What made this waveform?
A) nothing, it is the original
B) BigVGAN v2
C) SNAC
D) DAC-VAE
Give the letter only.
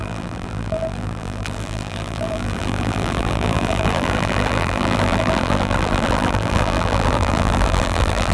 B